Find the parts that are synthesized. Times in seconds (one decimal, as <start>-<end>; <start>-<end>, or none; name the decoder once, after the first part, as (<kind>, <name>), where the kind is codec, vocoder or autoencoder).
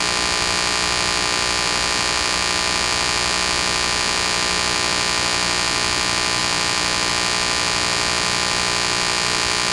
none